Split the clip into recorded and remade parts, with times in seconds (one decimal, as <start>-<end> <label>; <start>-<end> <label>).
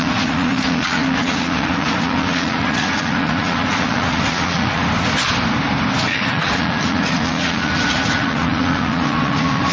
0.0-4.8 remade; 4.8-6.0 recorded; 6.0-9.7 remade